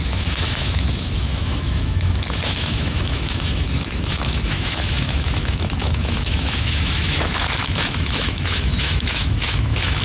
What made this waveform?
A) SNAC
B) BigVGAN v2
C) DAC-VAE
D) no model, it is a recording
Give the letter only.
C